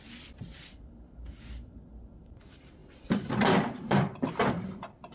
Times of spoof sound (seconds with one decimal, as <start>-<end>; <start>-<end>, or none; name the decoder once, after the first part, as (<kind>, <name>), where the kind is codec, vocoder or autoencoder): none